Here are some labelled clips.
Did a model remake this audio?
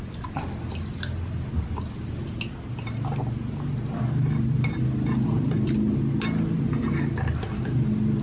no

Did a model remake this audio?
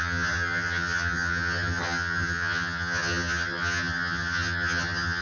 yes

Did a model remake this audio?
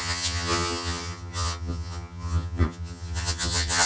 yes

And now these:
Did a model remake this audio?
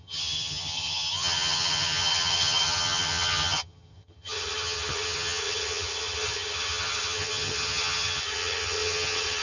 yes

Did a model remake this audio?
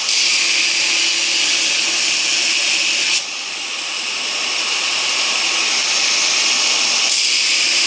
no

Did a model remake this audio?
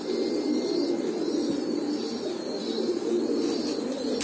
no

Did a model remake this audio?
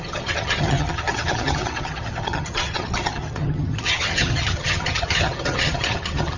yes